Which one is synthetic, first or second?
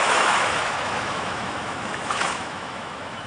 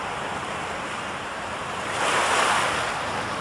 first